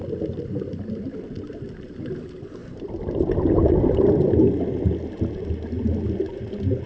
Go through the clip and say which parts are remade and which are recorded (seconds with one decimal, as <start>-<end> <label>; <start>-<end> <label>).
0.0-6.9 recorded